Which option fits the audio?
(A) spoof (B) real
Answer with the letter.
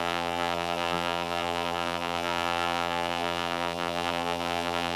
A